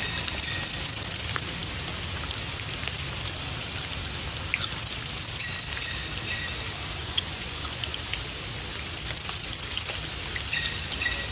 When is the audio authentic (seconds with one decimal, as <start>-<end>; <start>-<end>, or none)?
0.0-7.0; 8.0-11.3